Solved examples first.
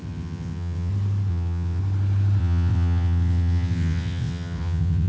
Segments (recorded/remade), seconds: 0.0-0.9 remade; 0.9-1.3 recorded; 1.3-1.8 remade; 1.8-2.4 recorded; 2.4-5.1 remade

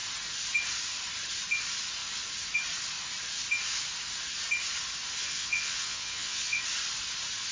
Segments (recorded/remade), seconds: 0.0-5.2 recorded; 5.2-6.6 remade; 6.6-7.5 recorded

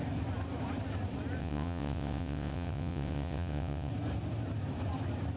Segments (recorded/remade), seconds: 0.0-1.4 recorded; 1.4-3.9 remade; 3.9-5.4 recorded